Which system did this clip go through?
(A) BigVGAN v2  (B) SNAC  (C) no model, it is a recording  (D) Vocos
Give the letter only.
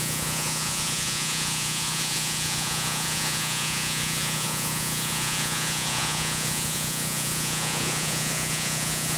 D